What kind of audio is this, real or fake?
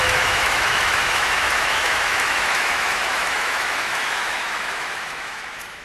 fake